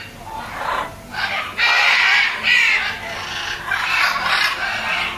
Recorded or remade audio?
recorded